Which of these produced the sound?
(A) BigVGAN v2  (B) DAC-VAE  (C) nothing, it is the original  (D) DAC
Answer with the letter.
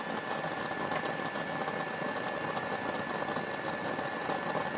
C